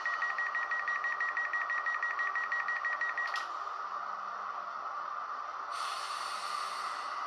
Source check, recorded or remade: recorded